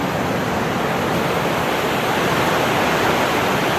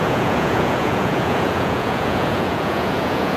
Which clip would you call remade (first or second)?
second